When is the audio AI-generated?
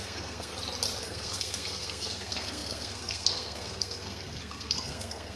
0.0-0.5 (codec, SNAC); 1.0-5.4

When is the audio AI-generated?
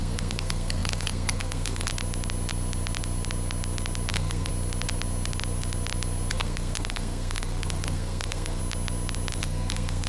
0.0-1.9 (codec, SNAC); 4.1-4.5; 6.3-8.6; 9.4-10.1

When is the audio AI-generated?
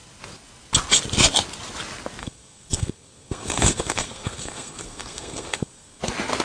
2.2-6.0 (codec, SNAC)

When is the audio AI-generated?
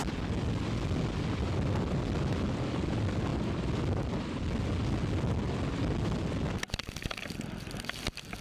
none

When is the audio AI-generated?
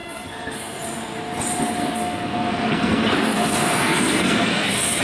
0.0-0.8 (codec, SNAC); 1.8-5.0